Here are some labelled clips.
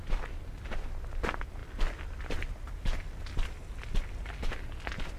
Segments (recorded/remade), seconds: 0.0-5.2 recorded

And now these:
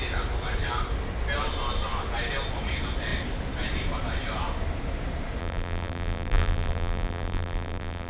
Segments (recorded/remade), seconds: 0.0-5.4 recorded; 5.4-8.1 remade